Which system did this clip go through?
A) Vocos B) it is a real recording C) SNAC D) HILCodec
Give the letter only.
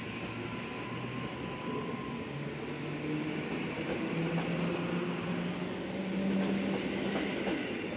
B